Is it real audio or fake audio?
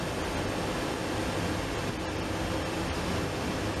real